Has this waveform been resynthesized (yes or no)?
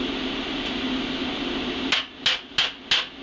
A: no